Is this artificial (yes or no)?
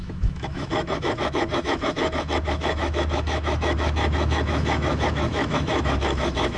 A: yes